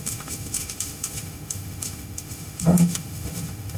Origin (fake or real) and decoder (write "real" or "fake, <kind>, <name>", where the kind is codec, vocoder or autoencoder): fake, autoencoder, DAC-VAE